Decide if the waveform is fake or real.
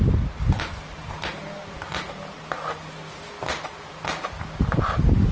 real